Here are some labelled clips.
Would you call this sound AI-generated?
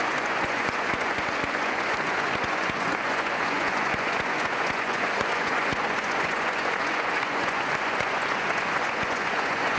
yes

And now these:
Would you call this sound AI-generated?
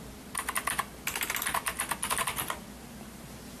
no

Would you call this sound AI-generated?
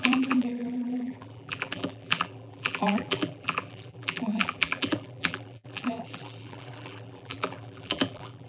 yes